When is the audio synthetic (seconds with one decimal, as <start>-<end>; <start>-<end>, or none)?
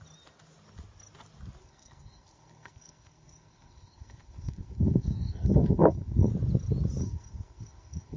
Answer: 1.6-6.3; 7.0-8.2